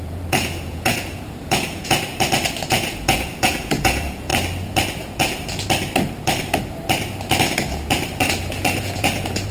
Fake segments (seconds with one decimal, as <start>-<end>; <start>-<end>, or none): 0.0-2.1; 2.7-4.3; 8.8-9.5